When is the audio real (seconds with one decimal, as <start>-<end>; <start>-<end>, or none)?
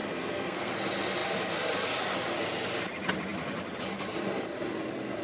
0.7-5.2